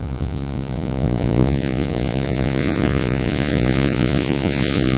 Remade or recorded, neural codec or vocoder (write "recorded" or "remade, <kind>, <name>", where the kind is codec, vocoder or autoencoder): remade, vocoder, Vocos